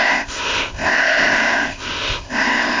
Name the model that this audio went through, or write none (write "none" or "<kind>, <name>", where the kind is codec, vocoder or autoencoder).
codec, ZipCodec